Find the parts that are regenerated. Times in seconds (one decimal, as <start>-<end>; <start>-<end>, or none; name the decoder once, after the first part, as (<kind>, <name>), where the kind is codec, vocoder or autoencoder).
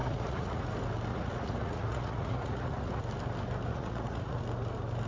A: 0.0-0.6 (vocoder, Vocos); 1.1-3.0; 3.7-4.4